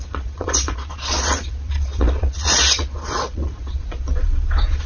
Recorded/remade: remade